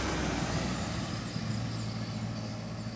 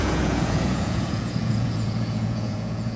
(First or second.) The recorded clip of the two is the first